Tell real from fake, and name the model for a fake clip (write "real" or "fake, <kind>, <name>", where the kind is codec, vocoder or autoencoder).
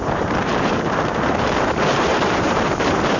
fake, vocoder, BigVGAN v2